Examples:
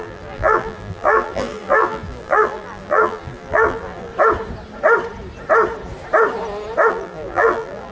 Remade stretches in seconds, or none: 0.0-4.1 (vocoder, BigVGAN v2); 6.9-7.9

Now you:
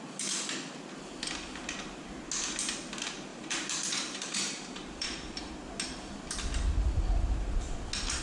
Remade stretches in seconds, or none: 3.3-5.5 (vocoder, BigVGAN v2)

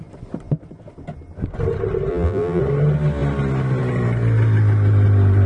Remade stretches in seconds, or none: 2.1-2.6 (vocoder, BigVGAN v2)

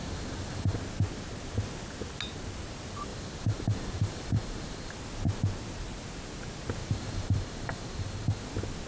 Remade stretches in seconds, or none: 0.0-0.8 (vocoder, BigVGAN v2); 3.1-4.9; 6.8-8.4

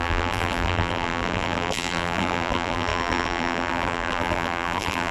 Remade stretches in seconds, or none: 0.0-5.1 (vocoder, BigVGAN v2)

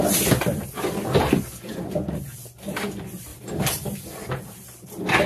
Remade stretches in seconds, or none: 0.0-5.3 (vocoder, BigVGAN v2)

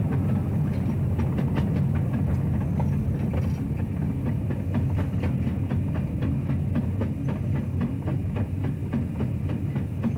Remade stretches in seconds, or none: 8.8-9.5 (vocoder, BigVGAN v2)

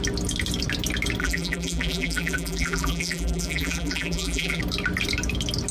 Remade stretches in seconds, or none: 1.2-4.6 (vocoder, BigVGAN v2)